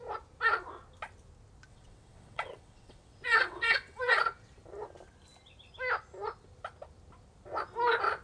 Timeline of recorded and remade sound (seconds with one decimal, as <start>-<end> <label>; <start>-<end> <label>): 0.0-1.7 recorded; 1.7-4.1 remade; 4.1-8.2 recorded